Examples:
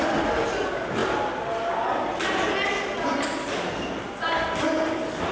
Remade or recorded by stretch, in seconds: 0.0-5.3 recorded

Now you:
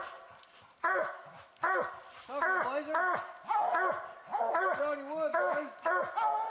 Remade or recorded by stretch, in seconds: 0.0-1.0 recorded; 1.0-1.5 remade; 1.5-5.3 recorded; 5.3-5.8 remade; 5.8-6.5 recorded

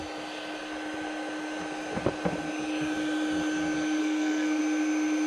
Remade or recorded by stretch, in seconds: 0.0-4.0 recorded; 4.0-4.6 remade; 4.6-5.3 recorded

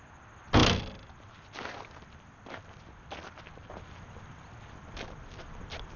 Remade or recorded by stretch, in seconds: 0.0-6.0 recorded

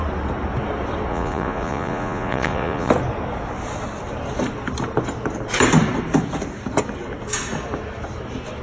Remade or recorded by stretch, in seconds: 0.0-1.1 recorded; 1.1-2.9 remade; 2.9-8.6 recorded